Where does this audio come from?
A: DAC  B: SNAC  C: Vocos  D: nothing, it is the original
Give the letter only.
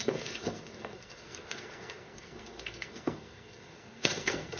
B